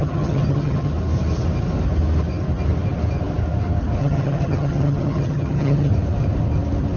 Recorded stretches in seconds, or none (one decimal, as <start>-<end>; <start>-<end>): 0.9-4.0; 5.9-7.0